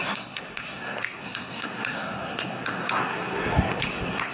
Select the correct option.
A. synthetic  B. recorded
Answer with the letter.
A